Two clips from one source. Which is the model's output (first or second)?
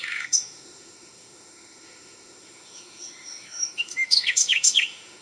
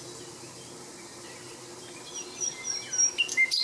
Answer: first